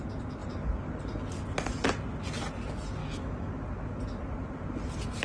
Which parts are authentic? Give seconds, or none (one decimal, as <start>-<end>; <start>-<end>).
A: 0.0-3.0; 3.5-5.2